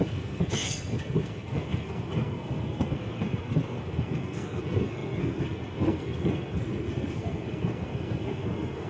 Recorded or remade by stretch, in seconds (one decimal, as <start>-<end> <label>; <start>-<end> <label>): 0.0-8.9 remade